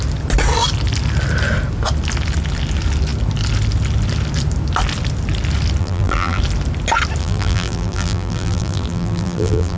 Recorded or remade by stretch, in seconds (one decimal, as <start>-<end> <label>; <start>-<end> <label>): 0.0-5.8 recorded; 5.8-6.4 remade; 6.4-7.2 recorded; 7.2-9.8 remade